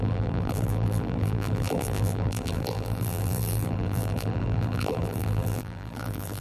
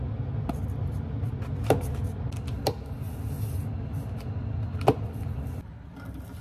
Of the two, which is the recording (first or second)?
second